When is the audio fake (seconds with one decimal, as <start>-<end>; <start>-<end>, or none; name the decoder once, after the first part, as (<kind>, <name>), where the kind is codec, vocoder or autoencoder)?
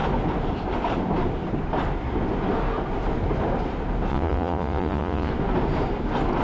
4.1-5.3 (vocoder, Vocos)